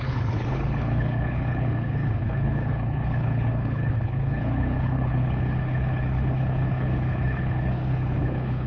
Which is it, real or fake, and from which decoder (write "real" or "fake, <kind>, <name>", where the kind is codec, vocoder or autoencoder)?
fake, codec, HILCodec